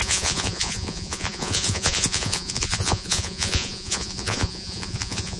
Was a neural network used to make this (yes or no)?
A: yes